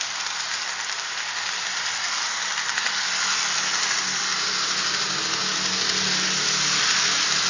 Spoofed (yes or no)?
no